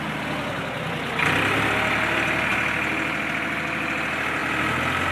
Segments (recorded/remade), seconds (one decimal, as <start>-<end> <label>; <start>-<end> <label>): 0.0-5.1 recorded